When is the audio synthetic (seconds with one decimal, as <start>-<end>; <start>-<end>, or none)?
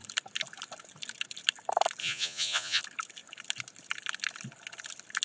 2.0-2.8